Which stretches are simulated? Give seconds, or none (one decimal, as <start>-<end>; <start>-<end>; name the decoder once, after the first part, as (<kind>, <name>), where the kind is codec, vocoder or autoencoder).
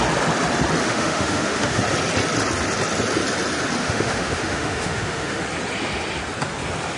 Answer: 0.8-1.8 (autoencoder, DAC-VAE); 3.8-5.4